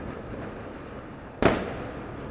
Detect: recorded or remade recorded